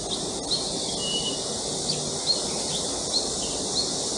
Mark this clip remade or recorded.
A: recorded